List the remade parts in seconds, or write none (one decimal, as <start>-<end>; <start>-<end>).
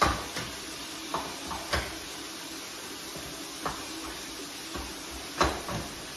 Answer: none